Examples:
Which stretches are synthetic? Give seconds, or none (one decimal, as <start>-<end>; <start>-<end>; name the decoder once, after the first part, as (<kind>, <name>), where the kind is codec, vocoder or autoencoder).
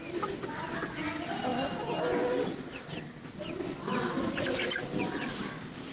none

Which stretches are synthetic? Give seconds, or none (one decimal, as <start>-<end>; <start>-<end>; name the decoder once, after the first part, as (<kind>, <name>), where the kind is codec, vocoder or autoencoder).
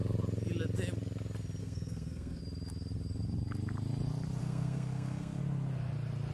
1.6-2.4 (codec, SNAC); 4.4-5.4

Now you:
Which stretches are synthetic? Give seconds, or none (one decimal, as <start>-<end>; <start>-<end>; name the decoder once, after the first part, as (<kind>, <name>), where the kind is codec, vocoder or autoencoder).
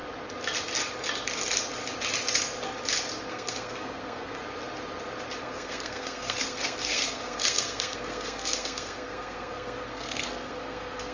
3.3-4.4 (codec, SNAC); 5.4-11.1